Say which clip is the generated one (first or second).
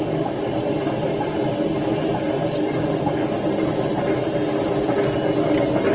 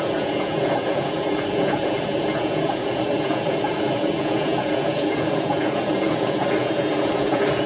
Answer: second